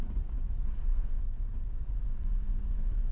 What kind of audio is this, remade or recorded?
remade